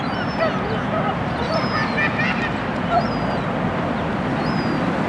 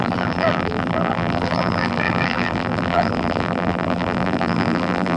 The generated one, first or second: second